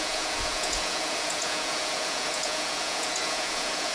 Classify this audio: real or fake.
fake